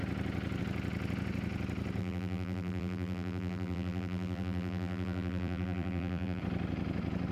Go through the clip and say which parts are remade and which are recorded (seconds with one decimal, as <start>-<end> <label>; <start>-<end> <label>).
0.0-2.0 recorded; 2.0-6.4 remade; 6.4-7.3 recorded